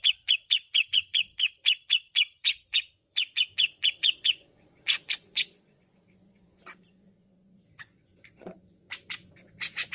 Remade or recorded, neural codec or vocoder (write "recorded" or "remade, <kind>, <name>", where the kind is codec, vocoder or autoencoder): remade, vocoder, Vocos